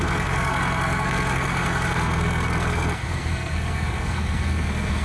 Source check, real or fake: fake